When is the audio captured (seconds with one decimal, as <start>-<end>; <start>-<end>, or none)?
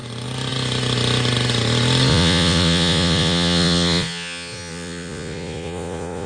0.0-2.1